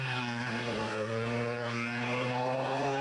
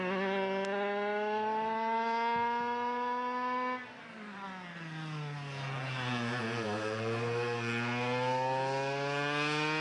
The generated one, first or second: first